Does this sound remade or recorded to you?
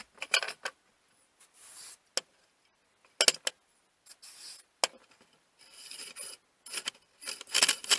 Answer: recorded